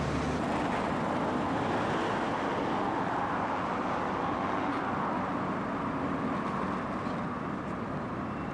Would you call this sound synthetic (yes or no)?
no